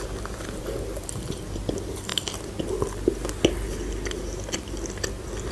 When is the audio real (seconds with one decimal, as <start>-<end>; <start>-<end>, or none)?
0.0-5.5